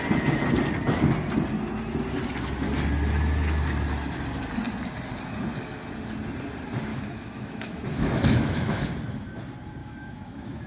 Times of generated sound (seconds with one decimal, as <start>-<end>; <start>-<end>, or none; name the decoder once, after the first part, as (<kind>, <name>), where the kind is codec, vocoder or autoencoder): 6.9-8.8 (autoencoder, DAC-VAE); 9.8-10.7

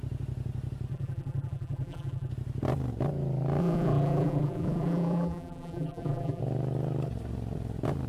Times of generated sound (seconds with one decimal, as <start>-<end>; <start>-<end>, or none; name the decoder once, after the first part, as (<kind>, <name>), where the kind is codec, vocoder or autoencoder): 0.9-2.3 (vocoder, BigVGAN v2); 3.6-6.4

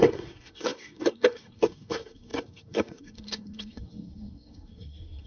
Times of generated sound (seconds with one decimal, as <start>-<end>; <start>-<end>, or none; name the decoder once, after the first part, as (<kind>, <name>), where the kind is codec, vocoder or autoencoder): 0.0-5.3 (codec, SNAC)

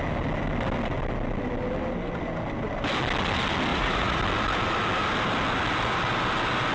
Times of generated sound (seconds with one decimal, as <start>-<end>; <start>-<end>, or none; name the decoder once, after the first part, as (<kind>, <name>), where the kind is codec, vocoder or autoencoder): 3.7-4.2 (vocoder, Vocos)